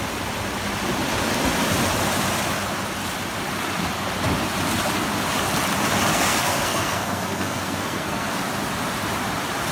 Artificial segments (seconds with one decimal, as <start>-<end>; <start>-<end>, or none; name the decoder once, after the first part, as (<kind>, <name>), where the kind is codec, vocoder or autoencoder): 6.1-8.3 (codec, SNAC)